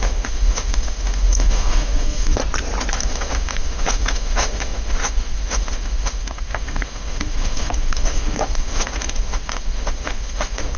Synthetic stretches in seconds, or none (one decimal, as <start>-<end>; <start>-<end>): 0.0-2.4; 2.9-10.8

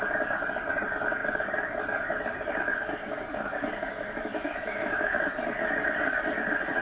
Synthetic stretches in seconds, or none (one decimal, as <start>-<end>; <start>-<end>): 2.7-5.3

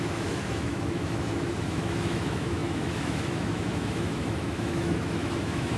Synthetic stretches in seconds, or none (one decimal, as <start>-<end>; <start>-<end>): 0.0-5.8

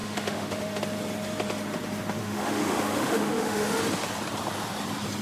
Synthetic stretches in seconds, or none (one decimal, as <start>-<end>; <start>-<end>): 0.0-0.8; 2.2-3.8

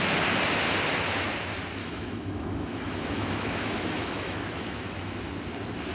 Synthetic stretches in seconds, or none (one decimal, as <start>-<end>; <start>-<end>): 1.8-5.3